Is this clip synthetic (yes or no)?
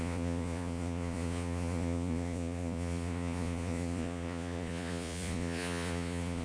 yes